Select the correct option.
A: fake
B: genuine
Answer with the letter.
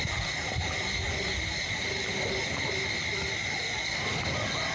B